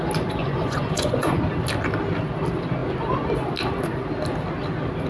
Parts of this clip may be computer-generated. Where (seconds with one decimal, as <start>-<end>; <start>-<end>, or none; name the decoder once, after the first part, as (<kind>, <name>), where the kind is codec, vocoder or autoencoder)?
0.4-1.4 (vocoder, Vocos)